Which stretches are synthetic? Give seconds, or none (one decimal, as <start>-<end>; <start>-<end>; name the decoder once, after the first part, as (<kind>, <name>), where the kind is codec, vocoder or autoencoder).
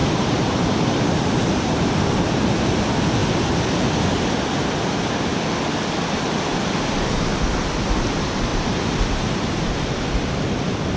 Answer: 0.0-1.1 (vocoder, BigVGAN v2); 8.5-9.6